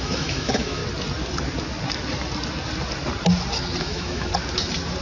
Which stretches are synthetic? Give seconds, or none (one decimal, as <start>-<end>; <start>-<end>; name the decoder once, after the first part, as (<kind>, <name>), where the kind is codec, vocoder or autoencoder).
0.0-0.8 (autoencoder, DAC-VAE); 3.8-4.3